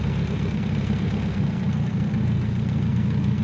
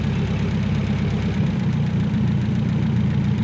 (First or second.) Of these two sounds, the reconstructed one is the first